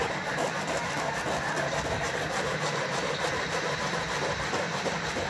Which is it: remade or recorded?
recorded